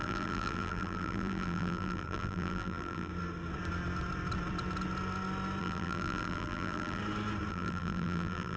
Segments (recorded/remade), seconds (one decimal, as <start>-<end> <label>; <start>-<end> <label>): 0.0-3.1 remade; 3.1-5.6 recorded; 5.6-7.0 remade; 7.0-7.5 recorded; 7.5-8.6 remade